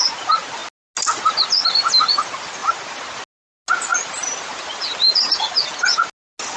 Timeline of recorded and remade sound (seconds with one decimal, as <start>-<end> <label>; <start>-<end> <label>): 0.0-6.6 recorded